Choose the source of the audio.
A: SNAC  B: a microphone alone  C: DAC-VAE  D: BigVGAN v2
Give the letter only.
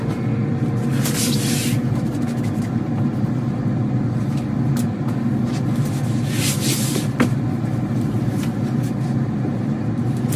B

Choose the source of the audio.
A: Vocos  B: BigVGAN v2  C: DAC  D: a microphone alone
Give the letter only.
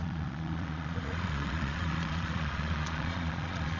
A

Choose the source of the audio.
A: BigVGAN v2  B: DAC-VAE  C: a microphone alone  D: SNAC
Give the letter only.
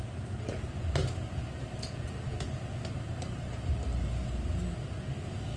C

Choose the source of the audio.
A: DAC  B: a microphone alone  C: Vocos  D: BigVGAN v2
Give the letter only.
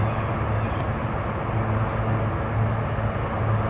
B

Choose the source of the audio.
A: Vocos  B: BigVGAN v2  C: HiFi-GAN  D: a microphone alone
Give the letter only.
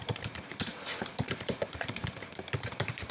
B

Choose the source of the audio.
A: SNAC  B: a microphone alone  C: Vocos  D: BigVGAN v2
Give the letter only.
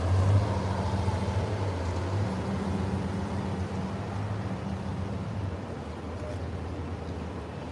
B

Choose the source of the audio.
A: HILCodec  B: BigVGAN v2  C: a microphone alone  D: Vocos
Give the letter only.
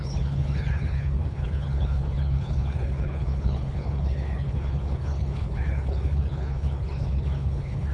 A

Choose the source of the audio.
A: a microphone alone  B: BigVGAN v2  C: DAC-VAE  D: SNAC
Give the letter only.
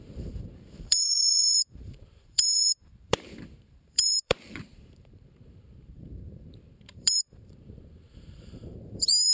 B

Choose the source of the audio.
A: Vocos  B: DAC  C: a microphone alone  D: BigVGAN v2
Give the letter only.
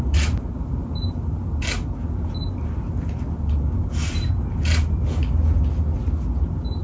C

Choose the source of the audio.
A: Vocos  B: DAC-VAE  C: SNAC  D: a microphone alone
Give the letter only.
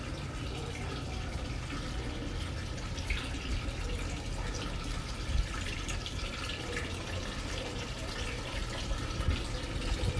D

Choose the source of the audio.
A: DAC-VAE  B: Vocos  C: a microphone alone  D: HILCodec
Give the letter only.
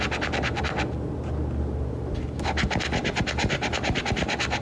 C